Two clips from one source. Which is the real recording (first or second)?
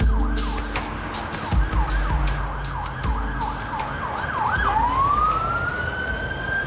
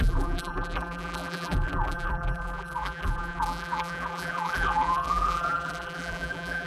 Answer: first